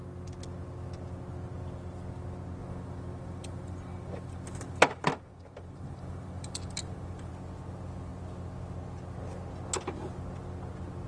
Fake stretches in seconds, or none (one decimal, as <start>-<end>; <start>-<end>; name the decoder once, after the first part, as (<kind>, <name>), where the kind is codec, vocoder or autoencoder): 2.6-7.3 (vocoder, BigVGAN v2)